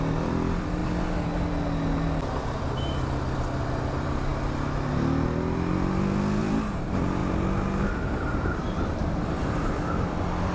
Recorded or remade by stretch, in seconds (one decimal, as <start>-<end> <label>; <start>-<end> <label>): 0.0-0.8 remade; 0.8-2.6 recorded; 2.6-4.3 remade; 4.3-6.4 recorded; 6.4-7.2 remade; 7.2-7.8 recorded; 7.8-10.5 remade